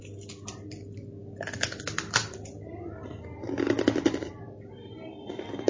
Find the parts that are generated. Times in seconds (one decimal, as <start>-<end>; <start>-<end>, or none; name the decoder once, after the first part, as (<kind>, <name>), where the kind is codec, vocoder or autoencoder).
none